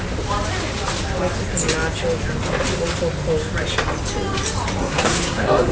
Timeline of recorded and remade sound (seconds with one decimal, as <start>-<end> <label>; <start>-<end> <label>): 0.0-4.8 recorded; 4.8-5.7 remade